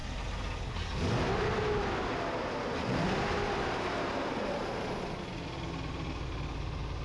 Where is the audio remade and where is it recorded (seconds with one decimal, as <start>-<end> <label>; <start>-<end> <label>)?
0.0-7.0 recorded